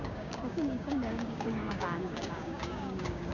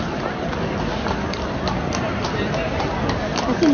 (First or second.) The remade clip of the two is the first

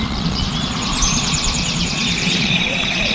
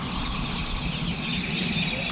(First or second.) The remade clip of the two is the first